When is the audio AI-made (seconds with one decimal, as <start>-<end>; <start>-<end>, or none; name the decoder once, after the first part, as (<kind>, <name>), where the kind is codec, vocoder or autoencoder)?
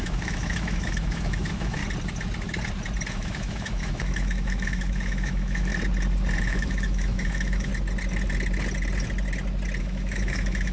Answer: 0.0-1.8 (autoencoder, DAC-VAE); 3.1-5.7; 6.4-7.7; 9.8-10.7